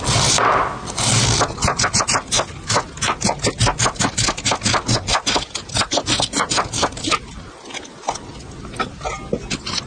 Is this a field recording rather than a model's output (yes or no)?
yes